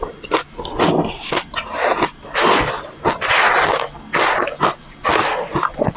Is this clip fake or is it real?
real